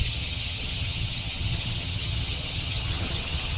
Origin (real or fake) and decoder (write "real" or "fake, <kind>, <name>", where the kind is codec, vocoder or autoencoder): fake, vocoder, HiFi-GAN